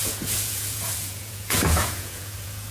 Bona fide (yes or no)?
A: no